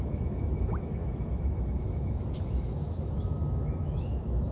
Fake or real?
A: fake